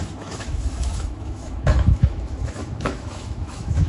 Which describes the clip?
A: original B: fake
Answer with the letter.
B